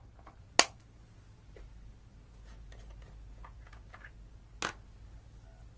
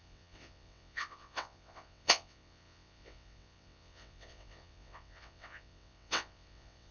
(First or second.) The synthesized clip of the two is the second